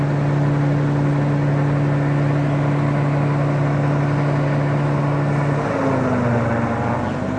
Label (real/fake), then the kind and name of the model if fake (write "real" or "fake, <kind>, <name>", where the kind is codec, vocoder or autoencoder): real